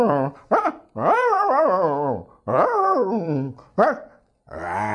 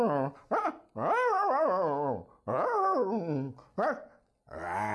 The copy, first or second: first